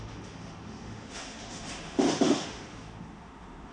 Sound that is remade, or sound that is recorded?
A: remade